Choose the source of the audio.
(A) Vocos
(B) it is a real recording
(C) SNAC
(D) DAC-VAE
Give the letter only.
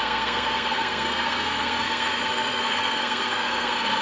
C